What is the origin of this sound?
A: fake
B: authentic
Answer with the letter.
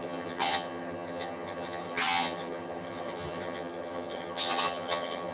A